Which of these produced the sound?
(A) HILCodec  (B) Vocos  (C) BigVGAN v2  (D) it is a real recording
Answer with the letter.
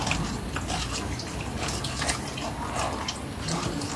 D